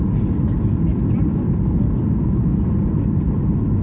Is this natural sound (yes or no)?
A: no